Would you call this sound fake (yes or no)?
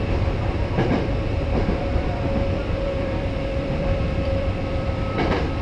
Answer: yes